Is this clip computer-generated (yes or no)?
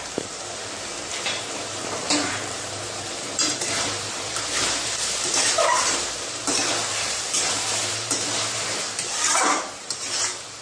yes